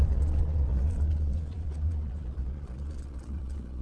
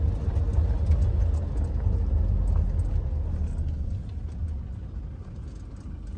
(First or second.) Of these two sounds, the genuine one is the second